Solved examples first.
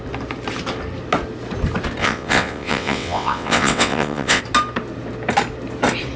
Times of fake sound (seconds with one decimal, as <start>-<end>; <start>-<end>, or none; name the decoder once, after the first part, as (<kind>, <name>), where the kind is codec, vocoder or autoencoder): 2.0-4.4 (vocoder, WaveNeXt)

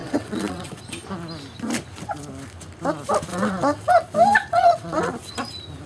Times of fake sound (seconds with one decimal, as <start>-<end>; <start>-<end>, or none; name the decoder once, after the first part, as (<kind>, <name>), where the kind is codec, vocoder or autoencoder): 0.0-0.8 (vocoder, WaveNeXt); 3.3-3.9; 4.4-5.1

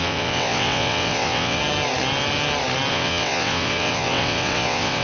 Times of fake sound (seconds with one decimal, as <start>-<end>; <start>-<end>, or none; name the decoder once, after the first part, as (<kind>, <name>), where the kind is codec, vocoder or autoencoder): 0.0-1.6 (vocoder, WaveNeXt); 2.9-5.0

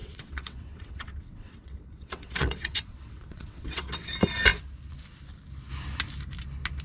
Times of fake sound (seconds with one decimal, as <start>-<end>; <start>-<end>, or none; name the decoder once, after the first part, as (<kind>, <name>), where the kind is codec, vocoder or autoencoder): 0.0-4.1 (vocoder, WaveNeXt)